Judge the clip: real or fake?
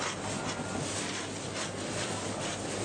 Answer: real